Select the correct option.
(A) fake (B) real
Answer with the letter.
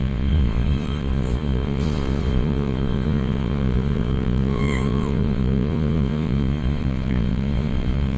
A